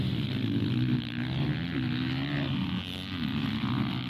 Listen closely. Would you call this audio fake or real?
real